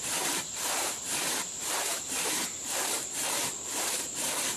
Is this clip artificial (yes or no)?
yes